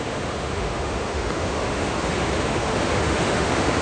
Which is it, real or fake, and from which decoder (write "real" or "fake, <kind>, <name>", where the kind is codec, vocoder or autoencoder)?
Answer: fake, autoencoder, DAC-VAE